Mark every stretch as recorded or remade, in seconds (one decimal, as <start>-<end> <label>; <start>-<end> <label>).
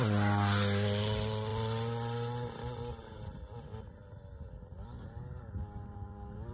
0.0-6.5 recorded